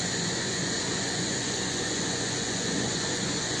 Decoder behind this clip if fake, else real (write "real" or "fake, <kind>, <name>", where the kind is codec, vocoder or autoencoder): fake, vocoder, Vocos